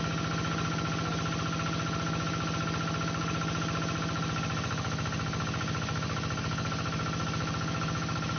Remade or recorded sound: recorded